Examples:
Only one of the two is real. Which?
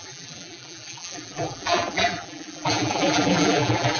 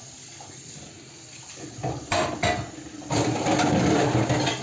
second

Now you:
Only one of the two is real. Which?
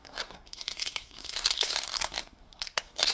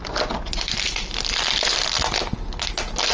second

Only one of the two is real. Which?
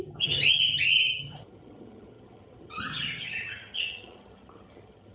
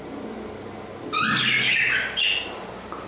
second